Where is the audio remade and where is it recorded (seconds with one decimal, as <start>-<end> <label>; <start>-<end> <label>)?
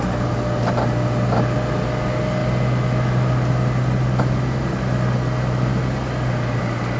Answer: 0.0-7.0 recorded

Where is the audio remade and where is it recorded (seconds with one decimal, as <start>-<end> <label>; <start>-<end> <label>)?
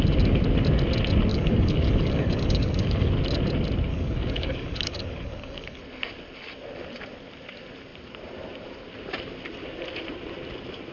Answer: 0.0-1.3 recorded; 1.3-3.1 remade; 3.1-3.9 recorded; 3.9-5.8 remade; 5.8-10.9 recorded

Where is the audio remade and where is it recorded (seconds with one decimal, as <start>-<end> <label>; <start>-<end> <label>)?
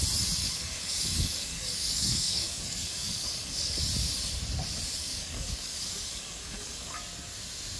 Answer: 0.0-0.4 recorded; 0.4-3.8 remade; 3.8-5.0 recorded; 5.0-7.0 remade; 7.0-7.8 recorded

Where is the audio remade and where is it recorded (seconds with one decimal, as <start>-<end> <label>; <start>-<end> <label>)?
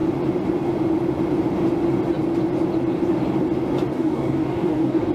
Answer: 0.0-3.9 recorded; 3.9-5.1 remade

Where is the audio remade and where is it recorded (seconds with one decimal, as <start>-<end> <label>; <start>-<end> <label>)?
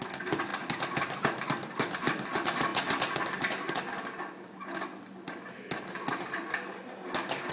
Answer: 0.0-7.5 recorded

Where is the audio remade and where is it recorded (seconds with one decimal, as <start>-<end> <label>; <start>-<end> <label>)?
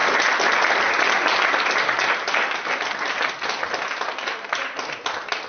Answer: 0.0-5.5 recorded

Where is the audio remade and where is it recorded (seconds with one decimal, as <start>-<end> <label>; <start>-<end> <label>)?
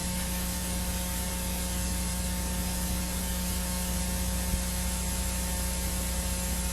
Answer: 0.0-4.0 remade; 4.0-6.7 recorded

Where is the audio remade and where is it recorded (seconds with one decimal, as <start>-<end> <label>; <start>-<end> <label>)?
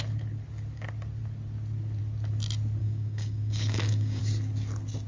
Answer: 0.0-2.8 recorded; 2.8-4.2 remade; 4.2-5.1 recorded